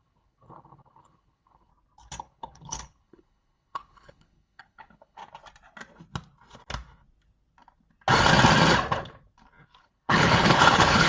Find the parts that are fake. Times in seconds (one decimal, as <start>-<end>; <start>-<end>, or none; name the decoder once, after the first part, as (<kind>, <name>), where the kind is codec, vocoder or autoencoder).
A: 0.0-1.7 (codec, HILCodec); 2.2-5.2; 9.8-11.1